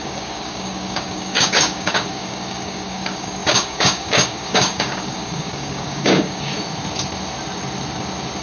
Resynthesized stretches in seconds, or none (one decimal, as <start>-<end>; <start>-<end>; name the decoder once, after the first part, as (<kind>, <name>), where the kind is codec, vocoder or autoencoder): 0.0-6.5 (codec, DAC)